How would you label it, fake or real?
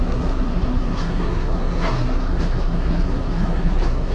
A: fake